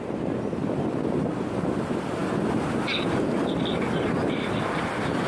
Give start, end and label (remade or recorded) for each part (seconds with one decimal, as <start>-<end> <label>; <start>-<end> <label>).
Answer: 0.0-5.3 recorded